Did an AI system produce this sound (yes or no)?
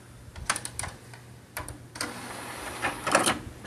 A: no